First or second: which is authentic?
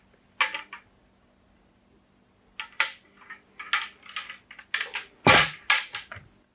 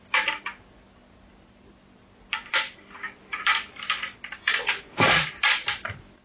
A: first